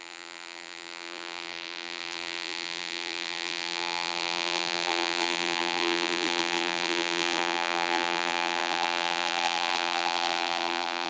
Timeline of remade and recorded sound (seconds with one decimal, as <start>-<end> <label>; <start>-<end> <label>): 0.0-11.1 remade